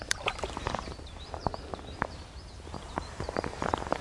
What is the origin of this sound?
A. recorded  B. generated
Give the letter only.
B